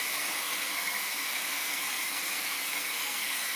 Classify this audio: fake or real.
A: fake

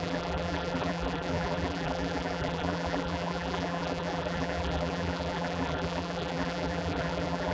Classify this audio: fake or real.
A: fake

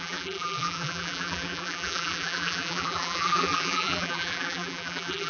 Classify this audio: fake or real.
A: fake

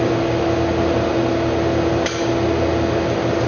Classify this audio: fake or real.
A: real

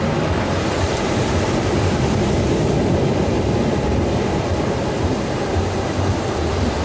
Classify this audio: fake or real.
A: fake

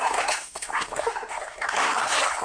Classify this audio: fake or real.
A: fake